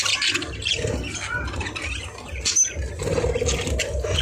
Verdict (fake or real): real